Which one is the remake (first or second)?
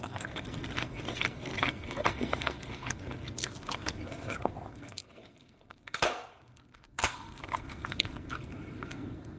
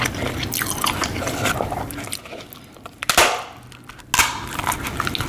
first